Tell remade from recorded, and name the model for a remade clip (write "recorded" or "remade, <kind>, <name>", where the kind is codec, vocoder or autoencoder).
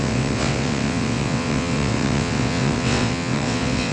remade, vocoder, WaveNeXt